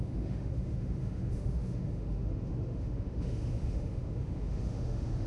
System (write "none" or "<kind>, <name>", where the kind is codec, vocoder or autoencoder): autoencoder, DAC-VAE